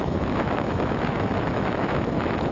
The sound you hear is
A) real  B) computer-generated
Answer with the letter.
B